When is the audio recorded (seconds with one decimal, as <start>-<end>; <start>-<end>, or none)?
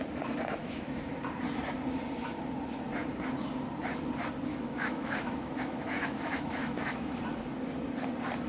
0.0-0.6; 1.1-4.5; 7.2-8.5